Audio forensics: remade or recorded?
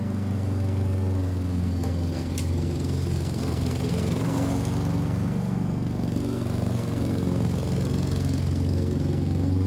remade